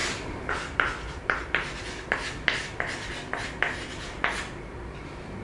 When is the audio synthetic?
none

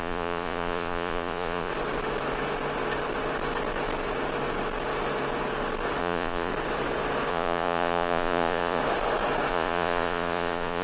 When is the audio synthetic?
0.0-1.7 (vocoder, Vocos); 6.0-6.5; 7.3-8.8; 9.5-10.8

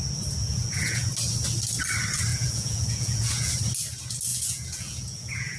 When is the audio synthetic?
0.4-1.1 (vocoder, Vocos); 2.3-3.5; 4.3-5.6

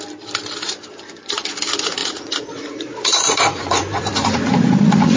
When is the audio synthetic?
2.0-5.2 (vocoder, Vocos)

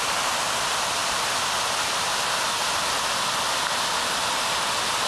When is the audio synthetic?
none